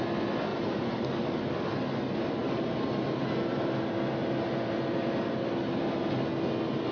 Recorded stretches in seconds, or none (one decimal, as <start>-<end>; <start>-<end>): 0.0-0.5; 1.4-2.4; 5.6-6.9